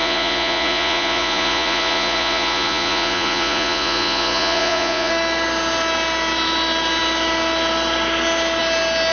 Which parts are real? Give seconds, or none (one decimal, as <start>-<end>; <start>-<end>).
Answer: 5.1-9.1

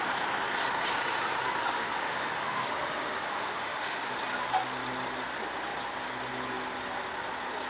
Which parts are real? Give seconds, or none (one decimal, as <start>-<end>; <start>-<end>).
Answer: 0.0-1.6; 4.0-7.7

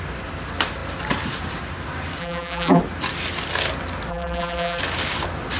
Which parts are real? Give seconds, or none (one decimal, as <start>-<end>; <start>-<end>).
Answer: 0.0-2.2; 2.8-4.1; 4.8-5.6

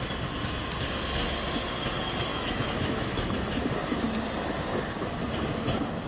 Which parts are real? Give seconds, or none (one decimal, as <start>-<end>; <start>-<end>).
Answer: 0.0-2.3; 3.6-6.1

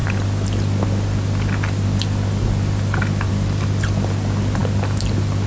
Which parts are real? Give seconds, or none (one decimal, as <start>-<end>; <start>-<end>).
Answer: 0.0-5.5

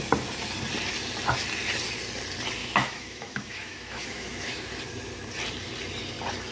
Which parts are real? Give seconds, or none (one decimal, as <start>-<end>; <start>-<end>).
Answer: 0.0-2.6; 4.7-6.5

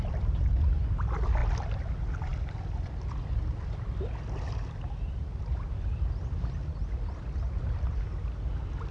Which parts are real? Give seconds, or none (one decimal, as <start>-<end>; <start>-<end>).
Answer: 0.0-8.9

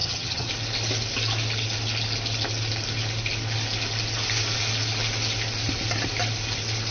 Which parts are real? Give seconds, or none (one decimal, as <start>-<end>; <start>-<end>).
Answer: 0.5-6.9